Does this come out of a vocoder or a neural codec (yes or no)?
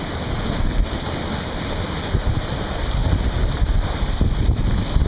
no